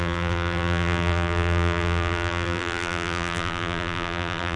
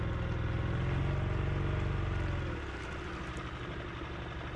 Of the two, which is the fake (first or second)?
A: first